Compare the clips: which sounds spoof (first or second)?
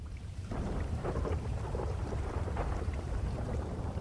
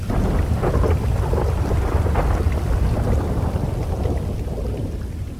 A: first